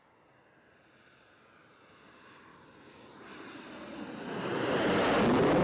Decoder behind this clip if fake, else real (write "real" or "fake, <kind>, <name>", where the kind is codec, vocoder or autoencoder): real